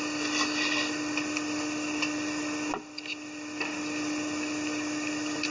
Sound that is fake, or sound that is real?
real